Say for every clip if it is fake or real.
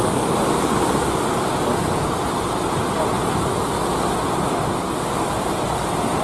real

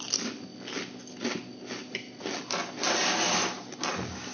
real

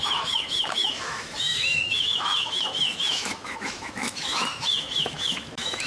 fake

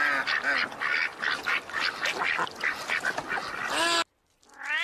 real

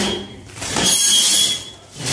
fake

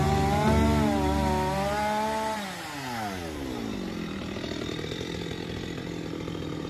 real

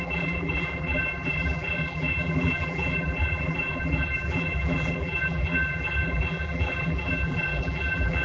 fake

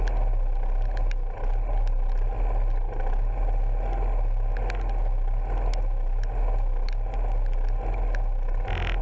real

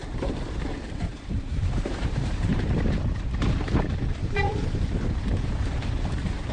fake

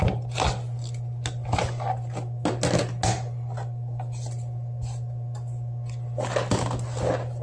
real